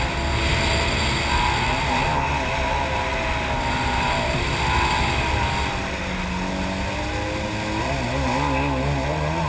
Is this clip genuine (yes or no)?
yes